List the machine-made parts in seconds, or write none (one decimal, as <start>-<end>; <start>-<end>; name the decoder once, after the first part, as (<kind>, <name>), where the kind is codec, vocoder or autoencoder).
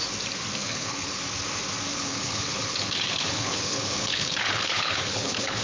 0.6-1.2 (codec, HILCodec); 1.9-5.6